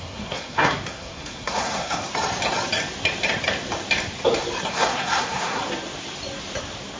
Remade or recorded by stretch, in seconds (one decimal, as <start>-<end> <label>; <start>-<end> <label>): 0.0-2.1 remade; 2.1-4.7 recorded; 4.7-5.6 remade; 5.6-7.0 recorded